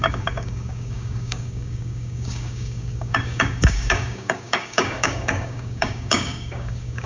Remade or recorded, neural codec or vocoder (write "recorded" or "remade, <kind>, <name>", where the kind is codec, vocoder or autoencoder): remade, codec, DAC